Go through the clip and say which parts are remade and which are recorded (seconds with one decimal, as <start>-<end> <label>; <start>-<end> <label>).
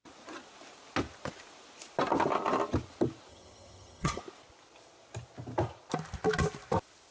0.0-3.3 recorded; 3.3-4.2 remade; 4.2-7.1 recorded